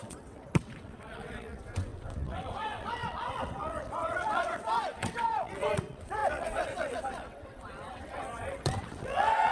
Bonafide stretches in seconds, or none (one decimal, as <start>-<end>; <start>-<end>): none